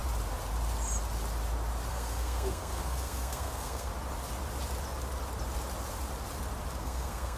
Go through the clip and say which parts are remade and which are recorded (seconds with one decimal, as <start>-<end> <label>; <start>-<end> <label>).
0.0-1.9 recorded; 1.9-3.9 remade; 3.9-6.8 recorded; 6.8-7.4 remade